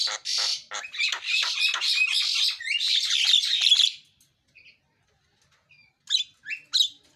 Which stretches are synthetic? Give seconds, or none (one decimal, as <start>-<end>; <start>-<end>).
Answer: none